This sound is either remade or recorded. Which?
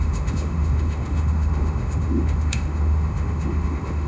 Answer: remade